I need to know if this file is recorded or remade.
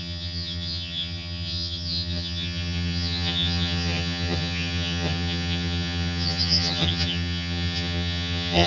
remade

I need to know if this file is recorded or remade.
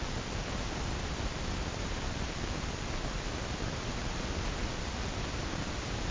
recorded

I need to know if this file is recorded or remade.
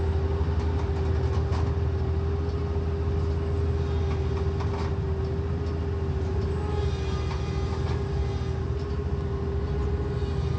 recorded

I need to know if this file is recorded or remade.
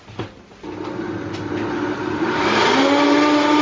recorded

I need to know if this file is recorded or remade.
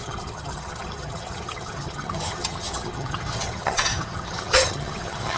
remade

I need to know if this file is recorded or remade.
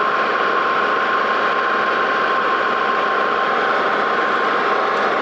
recorded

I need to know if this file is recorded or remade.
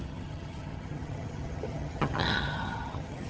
remade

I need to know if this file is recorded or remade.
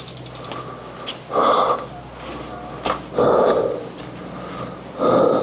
recorded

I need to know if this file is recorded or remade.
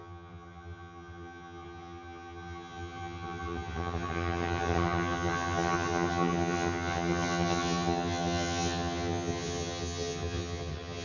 remade